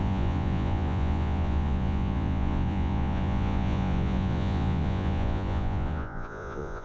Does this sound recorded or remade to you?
remade